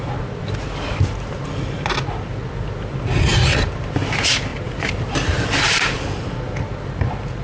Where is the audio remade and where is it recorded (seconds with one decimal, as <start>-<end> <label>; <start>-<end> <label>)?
0.0-7.4 recorded